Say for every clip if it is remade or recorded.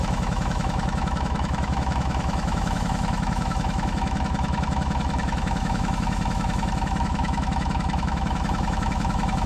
remade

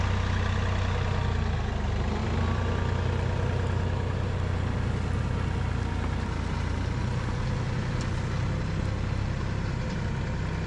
recorded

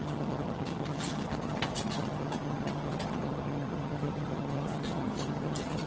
remade